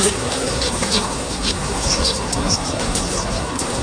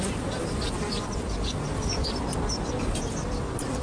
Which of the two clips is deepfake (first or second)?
first